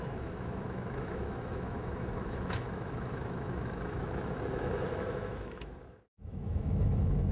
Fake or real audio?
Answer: fake